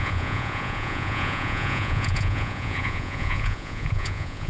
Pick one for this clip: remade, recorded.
remade